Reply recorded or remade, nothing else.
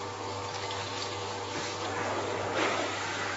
remade